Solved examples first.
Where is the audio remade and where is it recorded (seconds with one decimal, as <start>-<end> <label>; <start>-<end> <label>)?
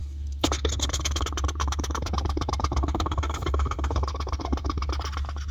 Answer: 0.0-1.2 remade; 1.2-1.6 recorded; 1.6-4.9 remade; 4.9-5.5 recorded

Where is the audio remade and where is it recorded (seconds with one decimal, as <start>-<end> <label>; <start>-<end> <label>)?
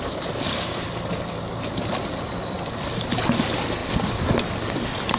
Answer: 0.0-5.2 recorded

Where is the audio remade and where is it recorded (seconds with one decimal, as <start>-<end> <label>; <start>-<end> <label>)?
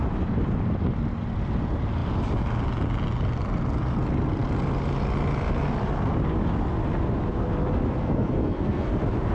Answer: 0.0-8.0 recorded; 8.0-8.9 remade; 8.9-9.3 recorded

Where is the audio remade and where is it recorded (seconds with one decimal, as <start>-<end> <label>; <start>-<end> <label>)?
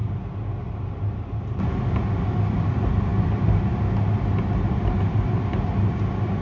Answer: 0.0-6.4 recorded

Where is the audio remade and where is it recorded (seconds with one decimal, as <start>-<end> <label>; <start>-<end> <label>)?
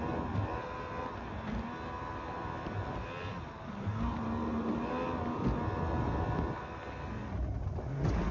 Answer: 0.0-8.3 recorded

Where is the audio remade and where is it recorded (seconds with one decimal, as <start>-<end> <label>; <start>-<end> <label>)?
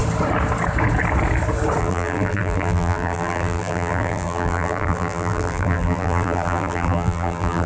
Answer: 0.0-1.8 recorded; 1.8-7.7 remade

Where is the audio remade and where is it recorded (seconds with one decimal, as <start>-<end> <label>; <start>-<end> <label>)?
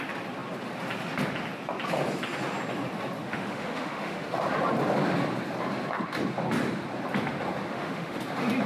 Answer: 0.0-3.2 recorded; 3.2-4.3 remade; 4.3-7.7 recorded; 7.7-8.2 remade; 8.2-8.7 recorded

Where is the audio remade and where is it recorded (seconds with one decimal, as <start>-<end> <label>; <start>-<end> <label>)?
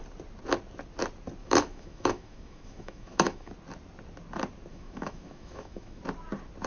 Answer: 0.0-1.4 recorded; 1.4-3.5 remade; 3.5-4.7 recorded; 4.7-6.0 remade; 6.0-6.7 recorded